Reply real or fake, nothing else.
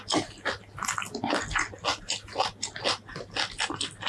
real